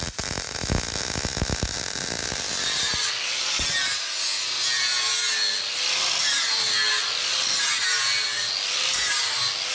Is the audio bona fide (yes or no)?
yes